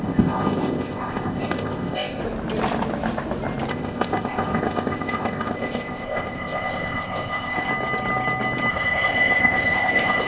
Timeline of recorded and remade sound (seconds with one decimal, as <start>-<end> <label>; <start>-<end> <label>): 0.0-2.2 remade; 2.2-3.7 recorded; 3.7-7.7 remade; 7.7-8.7 recorded; 8.7-10.3 remade